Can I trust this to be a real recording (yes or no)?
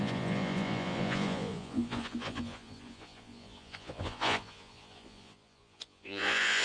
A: no